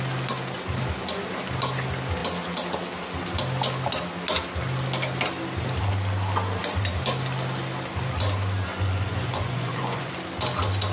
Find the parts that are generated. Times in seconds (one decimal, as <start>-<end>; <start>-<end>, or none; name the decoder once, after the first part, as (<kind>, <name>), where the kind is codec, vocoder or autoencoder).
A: 8.7-10.1 (vocoder, Vocos)